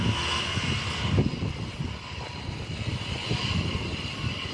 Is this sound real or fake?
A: real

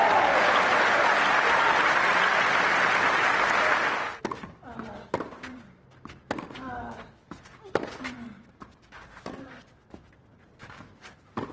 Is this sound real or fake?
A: real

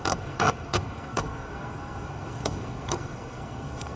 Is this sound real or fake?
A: fake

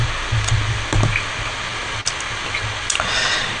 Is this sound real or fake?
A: real